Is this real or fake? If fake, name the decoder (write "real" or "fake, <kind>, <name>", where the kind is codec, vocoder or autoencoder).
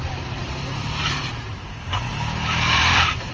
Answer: fake, vocoder, BigVGAN v2